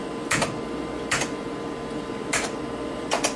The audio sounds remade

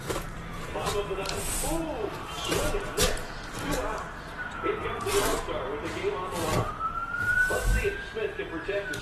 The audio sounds remade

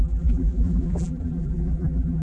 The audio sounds remade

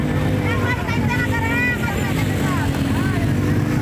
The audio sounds recorded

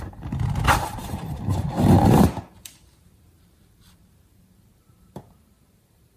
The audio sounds remade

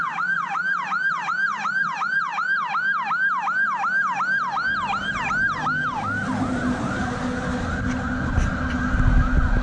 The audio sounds recorded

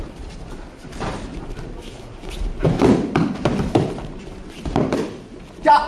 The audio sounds remade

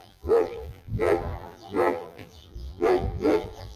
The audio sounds remade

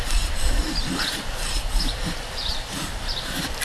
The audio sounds remade